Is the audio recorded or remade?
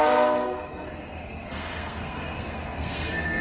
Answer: remade